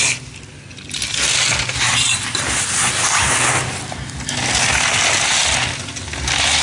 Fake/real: real